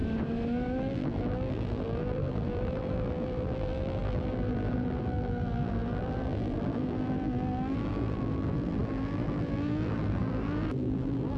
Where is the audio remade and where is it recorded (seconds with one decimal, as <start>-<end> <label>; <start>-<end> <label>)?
0.0-0.8 recorded; 0.8-11.4 remade